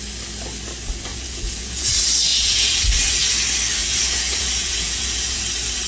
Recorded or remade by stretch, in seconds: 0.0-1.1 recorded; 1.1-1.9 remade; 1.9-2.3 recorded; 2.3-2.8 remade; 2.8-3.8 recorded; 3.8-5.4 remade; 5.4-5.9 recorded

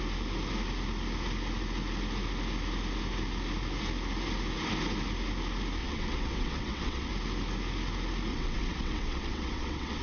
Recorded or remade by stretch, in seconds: 0.0-5.8 recorded; 5.8-7.1 remade; 7.1-8.3 recorded; 8.3-10.0 remade

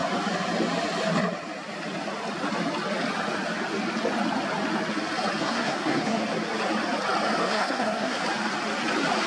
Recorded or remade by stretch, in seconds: 0.0-5.4 recorded; 5.4-6.2 remade; 6.2-7.4 recorded; 7.4-8.2 remade; 8.2-9.3 recorded